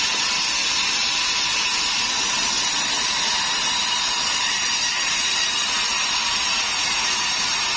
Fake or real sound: real